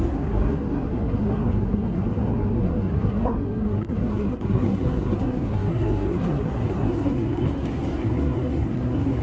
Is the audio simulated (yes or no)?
yes